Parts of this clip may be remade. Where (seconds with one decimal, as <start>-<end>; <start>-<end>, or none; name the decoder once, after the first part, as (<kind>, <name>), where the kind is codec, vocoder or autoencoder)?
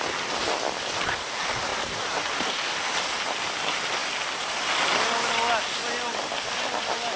none